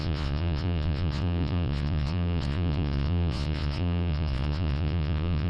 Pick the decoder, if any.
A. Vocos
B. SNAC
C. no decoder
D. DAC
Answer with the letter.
A